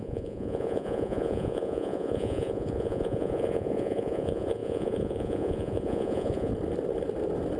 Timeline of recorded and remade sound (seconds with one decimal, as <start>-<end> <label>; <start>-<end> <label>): 0.0-6.5 remade; 6.5-7.6 recorded

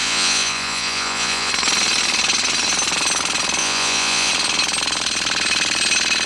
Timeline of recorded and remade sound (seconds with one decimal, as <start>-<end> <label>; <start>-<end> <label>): 0.0-1.5 remade; 1.5-3.6 recorded; 3.6-4.3 remade; 4.3-6.3 recorded

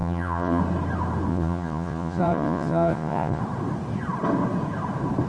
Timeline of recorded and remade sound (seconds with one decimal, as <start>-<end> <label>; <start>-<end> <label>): 0.0-0.6 remade; 0.6-1.3 recorded; 1.3-3.4 remade; 3.4-5.3 recorded

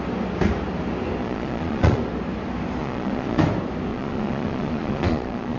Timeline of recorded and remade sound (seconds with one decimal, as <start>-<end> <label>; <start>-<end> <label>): 0.0-1.2 recorded; 1.2-2.0 remade; 2.0-2.8 recorded; 2.8-3.4 remade; 3.4-3.9 recorded; 3.9-5.6 remade

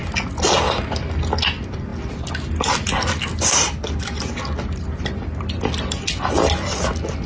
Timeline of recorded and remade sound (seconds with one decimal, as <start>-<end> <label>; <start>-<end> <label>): 0.0-7.3 recorded

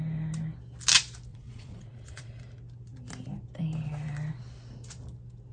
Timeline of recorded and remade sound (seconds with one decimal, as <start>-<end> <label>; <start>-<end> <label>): 0.0-1.3 recorded; 1.3-2.4 remade; 2.4-5.5 recorded

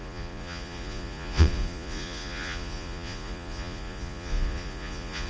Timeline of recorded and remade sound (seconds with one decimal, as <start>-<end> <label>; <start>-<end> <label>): 0.0-5.3 remade

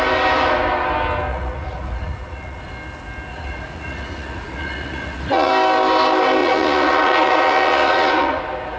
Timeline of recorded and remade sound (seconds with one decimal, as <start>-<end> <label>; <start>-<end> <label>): 0.0-1.3 recorded; 1.3-2.6 remade; 2.6-3.3 recorded; 3.3-5.5 remade; 5.5-6.4 recorded; 6.4-8.4 remade; 8.4-8.8 recorded